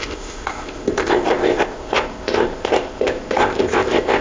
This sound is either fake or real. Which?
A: fake